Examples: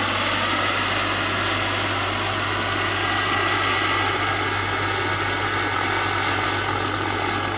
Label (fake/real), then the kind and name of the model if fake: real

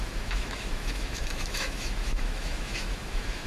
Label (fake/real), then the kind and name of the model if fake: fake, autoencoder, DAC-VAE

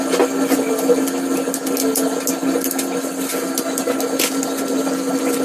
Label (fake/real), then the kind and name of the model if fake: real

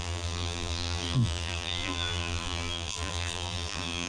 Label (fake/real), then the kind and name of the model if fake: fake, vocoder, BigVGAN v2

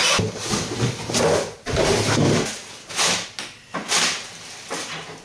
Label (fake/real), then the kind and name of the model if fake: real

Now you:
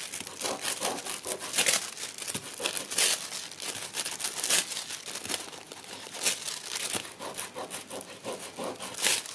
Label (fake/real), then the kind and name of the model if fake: real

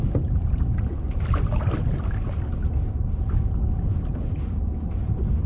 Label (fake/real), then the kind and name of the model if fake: real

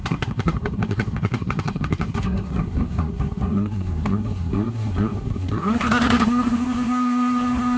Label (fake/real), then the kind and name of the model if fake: fake, codec, SNAC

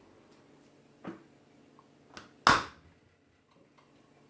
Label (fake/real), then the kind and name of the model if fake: real